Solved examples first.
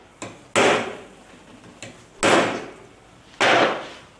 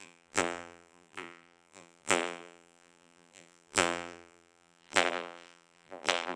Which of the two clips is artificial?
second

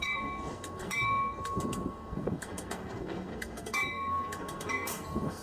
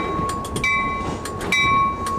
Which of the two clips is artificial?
first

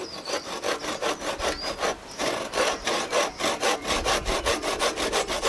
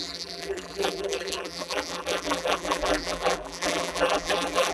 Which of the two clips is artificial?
second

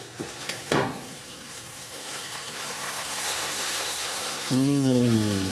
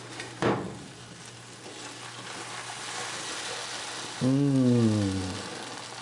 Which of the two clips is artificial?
first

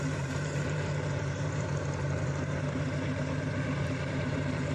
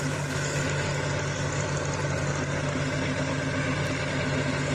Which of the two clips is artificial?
first